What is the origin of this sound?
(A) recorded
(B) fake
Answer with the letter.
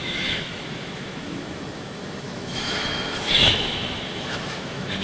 B